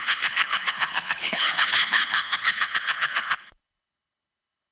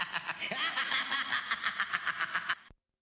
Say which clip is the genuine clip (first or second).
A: second